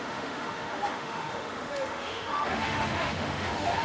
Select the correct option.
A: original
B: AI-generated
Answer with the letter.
B